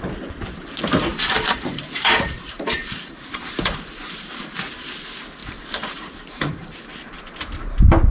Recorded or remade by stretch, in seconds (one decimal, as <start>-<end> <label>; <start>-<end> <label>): 0.0-1.1 recorded; 1.1-4.4 remade; 4.4-5.4 recorded; 5.4-7.4 remade; 7.4-8.1 recorded